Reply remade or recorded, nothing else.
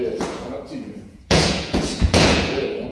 remade